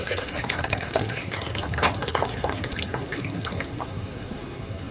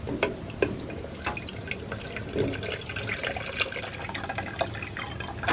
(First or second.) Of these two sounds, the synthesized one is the first